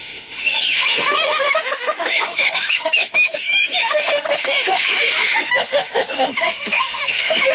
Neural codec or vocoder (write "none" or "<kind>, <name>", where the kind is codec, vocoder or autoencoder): autoencoder, DAC-VAE